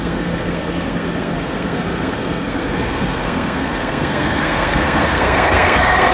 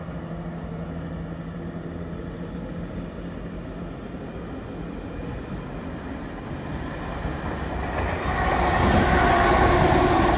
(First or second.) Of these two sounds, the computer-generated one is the first